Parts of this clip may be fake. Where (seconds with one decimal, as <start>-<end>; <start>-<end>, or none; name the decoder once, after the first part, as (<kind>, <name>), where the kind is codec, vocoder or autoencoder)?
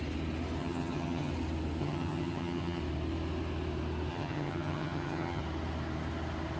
0.6-1.3 (vocoder, HiFi-GAN); 1.8-2.8; 4.1-5.4